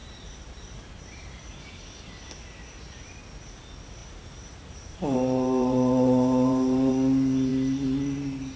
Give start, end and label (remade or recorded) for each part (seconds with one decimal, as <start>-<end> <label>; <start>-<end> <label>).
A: 0.0-1.2 remade; 1.2-4.0 recorded; 4.0-6.9 remade; 6.9-8.6 recorded